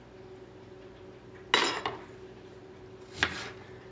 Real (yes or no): yes